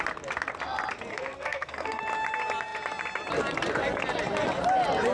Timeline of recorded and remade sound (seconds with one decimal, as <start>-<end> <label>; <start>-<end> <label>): 0.0-1.1 recorded; 1.1-2.0 remade; 2.0-5.1 recorded

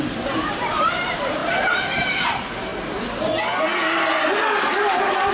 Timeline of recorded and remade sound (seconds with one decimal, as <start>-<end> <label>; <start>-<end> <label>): 0.0-2.7 remade; 2.7-4.2 recorded; 4.2-5.3 remade

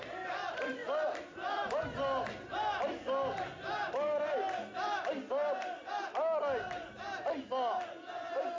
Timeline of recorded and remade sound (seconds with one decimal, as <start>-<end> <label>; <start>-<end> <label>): 0.0-8.6 recorded

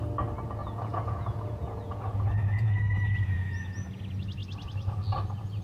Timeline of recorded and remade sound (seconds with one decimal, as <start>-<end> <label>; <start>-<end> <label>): 0.0-0.6 recorded; 0.6-4.0 remade; 4.0-5.6 recorded